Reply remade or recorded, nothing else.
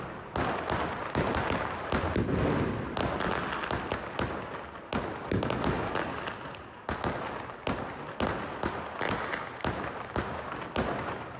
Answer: recorded